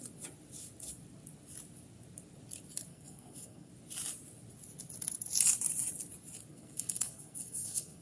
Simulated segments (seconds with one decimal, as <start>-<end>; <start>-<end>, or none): 2.9-3.7; 6.5-8.0